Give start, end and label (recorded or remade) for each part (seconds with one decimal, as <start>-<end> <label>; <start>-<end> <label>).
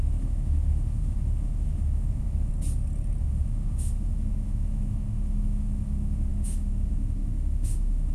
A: 0.0-2.5 remade; 2.5-3.2 recorded; 3.2-8.1 remade